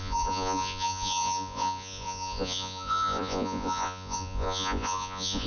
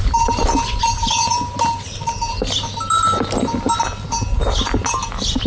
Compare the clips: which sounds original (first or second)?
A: second